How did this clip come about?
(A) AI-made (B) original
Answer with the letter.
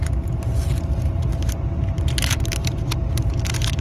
A